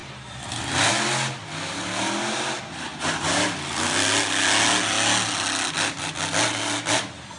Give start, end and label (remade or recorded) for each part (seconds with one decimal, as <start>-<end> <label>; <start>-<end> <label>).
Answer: 0.0-7.4 recorded